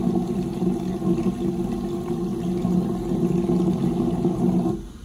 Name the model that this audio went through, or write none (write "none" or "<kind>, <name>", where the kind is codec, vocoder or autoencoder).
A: none